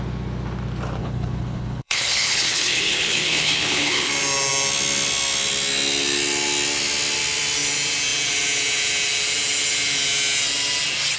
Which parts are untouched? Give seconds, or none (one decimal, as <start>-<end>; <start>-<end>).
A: 0.0-1.0; 4.1-11.2